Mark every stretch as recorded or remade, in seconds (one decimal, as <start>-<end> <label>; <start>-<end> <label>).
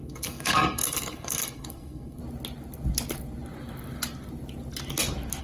0.0-2.2 remade; 2.2-5.4 recorded